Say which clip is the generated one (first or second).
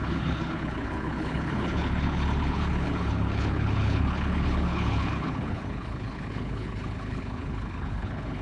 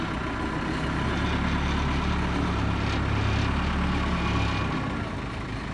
first